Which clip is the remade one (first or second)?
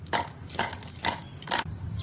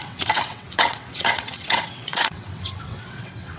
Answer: second